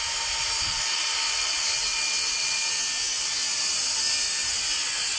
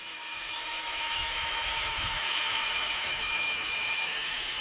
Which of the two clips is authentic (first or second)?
first